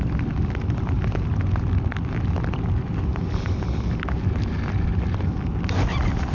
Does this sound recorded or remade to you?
recorded